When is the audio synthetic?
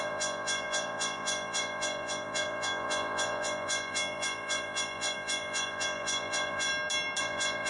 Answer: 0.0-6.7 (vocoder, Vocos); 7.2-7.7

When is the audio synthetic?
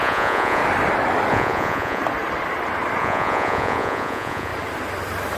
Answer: 0.0-0.6 (vocoder, Vocos); 1.3-2.0; 3.0-4.5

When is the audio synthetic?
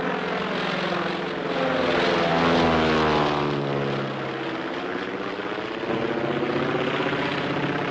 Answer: none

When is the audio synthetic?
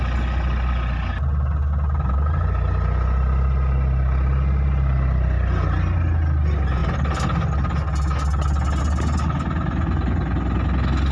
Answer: none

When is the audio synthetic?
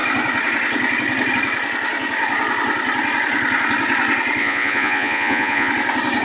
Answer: 4.4-5.7 (vocoder, Vocos)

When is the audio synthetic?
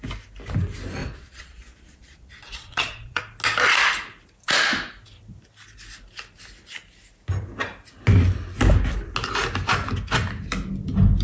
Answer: 1.0-3.2 (vocoder, Vocos)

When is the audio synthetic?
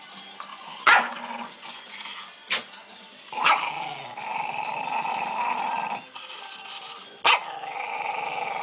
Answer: 0.5-2.3 (vocoder, Vocos)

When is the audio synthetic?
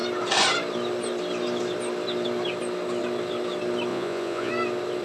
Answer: 3.9-4.5 (vocoder, Vocos)